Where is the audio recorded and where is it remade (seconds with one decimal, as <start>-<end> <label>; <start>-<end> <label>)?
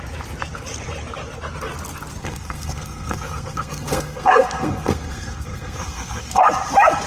0.0-2.2 recorded; 2.2-6.5 remade; 6.5-7.1 recorded